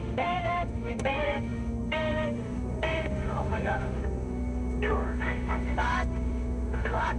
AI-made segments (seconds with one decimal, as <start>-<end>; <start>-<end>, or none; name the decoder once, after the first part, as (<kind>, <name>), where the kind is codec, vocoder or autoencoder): 0.0-7.2 (autoencoder, DAC-VAE)